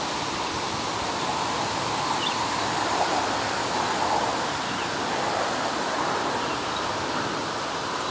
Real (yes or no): yes